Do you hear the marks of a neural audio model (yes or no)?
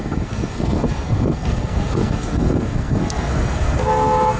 yes